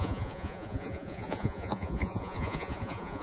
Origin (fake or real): fake